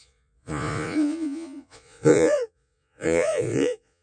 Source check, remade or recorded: remade